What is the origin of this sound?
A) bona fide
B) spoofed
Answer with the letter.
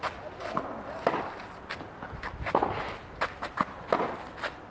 A